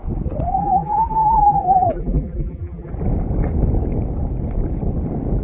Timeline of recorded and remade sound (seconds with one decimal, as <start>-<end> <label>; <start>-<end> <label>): 0.0-0.6 recorded; 0.6-2.9 remade; 2.9-5.4 recorded